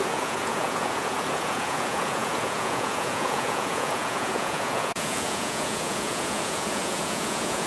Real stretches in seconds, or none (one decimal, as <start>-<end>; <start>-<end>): none